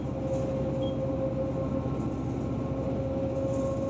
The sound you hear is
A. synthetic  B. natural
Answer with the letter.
B